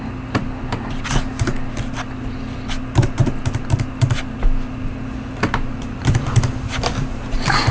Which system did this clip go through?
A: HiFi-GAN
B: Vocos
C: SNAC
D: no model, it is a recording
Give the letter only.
D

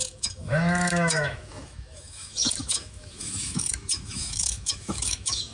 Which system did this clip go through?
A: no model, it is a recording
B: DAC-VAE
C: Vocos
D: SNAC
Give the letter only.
B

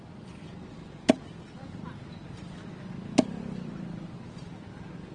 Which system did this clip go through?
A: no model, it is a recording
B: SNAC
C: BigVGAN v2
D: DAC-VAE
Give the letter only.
A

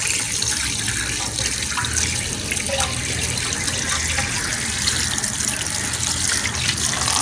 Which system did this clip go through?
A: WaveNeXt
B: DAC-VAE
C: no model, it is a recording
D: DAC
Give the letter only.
C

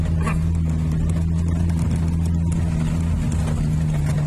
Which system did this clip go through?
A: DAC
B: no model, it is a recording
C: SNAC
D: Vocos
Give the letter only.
B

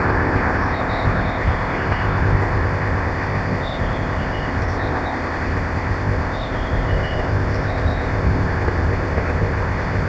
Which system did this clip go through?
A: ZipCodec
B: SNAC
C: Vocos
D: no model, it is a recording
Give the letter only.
A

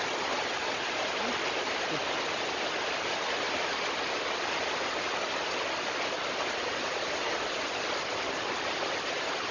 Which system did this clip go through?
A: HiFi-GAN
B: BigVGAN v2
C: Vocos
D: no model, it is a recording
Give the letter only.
D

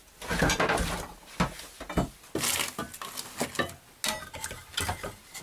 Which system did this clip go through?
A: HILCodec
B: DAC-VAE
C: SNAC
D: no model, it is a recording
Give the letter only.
D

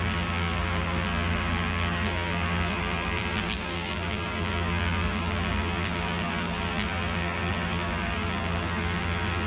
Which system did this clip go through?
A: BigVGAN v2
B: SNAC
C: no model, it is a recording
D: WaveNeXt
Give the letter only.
A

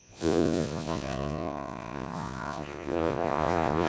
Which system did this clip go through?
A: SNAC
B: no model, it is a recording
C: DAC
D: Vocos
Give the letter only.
D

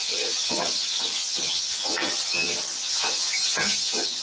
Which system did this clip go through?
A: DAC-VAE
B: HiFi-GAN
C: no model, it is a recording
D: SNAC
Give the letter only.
B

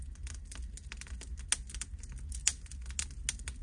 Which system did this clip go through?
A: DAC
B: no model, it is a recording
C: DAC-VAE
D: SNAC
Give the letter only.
B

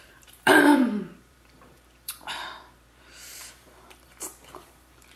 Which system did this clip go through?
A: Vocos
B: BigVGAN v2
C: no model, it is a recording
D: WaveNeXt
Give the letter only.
B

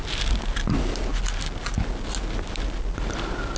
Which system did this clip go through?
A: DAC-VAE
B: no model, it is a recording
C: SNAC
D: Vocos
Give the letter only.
B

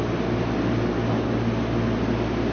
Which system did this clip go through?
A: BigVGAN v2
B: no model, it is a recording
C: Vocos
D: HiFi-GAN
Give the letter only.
B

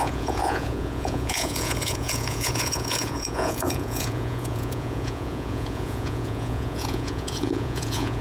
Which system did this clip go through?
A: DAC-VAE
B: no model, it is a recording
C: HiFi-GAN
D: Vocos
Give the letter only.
D